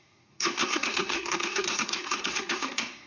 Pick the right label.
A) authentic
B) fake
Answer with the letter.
B